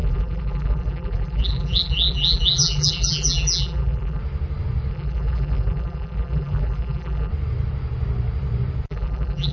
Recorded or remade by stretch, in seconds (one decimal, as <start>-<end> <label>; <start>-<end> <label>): 0.0-4.2 remade; 4.2-4.9 recorded; 4.9-7.3 remade; 7.3-8.9 recorded; 8.9-9.5 remade